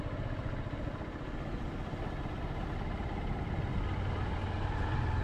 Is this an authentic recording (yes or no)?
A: yes